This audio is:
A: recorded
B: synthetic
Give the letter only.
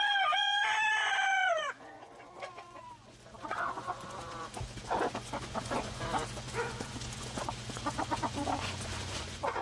B